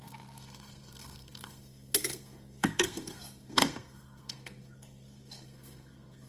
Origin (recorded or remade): remade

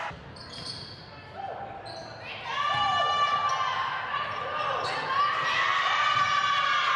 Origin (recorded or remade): recorded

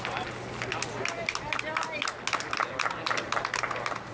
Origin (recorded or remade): recorded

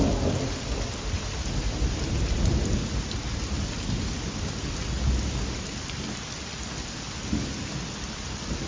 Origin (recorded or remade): recorded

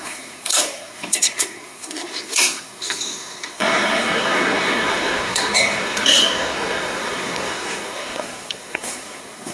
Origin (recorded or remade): remade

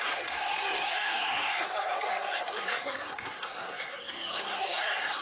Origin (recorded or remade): remade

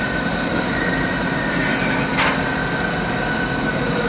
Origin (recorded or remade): recorded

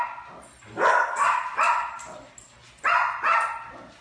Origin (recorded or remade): recorded